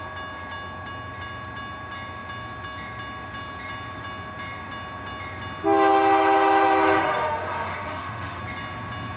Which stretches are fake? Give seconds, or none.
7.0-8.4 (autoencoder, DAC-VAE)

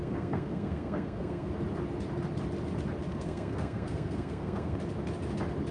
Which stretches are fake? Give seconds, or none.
0.0-1.5 (codec, SNAC); 3.1-4.8

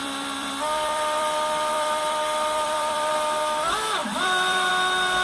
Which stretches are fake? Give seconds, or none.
0.0-3.1 (vocoder, BigVGAN v2); 4.0-4.7